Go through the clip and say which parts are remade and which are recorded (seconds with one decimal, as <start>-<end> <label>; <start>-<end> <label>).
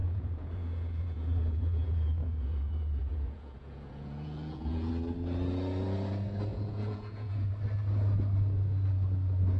0.0-4.9 remade; 4.9-6.5 recorded; 6.5-7.5 remade; 7.5-9.6 recorded